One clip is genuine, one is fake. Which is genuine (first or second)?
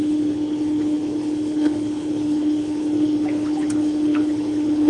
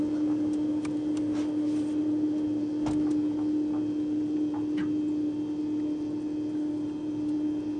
second